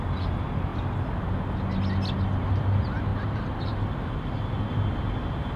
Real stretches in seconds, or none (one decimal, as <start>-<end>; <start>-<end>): 0.0-5.6